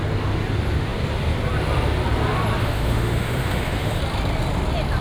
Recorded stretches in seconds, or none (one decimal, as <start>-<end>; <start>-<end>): 0.0-2.6; 4.0-5.0